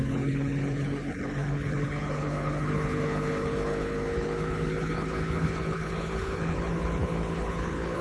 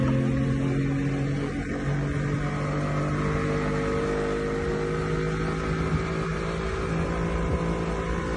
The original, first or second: second